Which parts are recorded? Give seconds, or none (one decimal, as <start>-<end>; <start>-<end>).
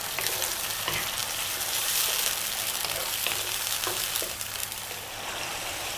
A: none